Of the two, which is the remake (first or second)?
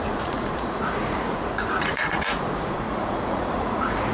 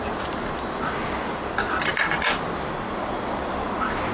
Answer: first